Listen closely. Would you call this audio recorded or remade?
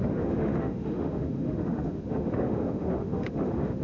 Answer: remade